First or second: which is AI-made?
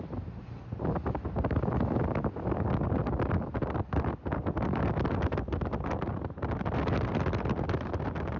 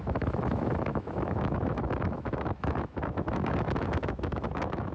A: second